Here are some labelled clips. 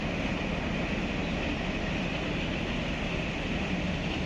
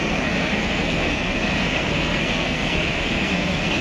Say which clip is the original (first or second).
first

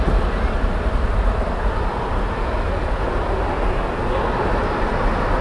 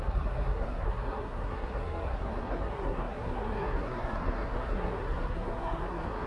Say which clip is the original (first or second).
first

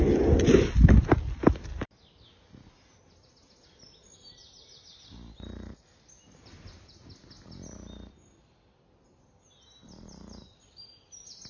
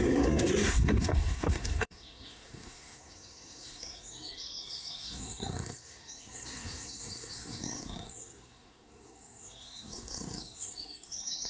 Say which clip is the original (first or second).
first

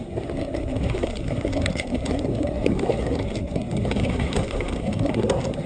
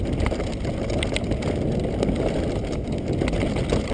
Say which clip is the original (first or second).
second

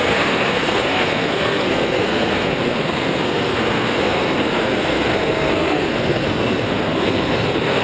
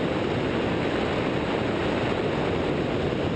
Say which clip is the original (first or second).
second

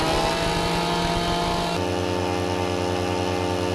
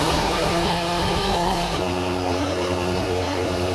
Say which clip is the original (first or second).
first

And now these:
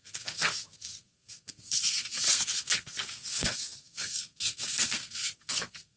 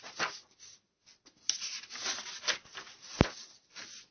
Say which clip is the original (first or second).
second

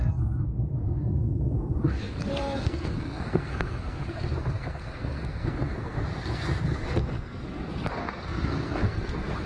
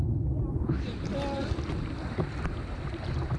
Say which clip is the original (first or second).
second